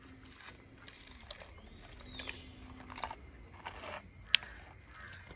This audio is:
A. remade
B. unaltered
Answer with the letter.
B